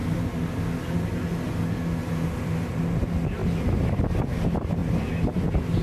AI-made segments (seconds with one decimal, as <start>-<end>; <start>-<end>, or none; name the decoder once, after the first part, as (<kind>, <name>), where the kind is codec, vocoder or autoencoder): 0.0-0.6 (vocoder, BigVGAN v2); 2.0-2.8; 3.4-3.9